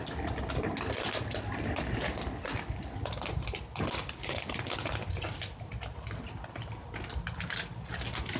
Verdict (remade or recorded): recorded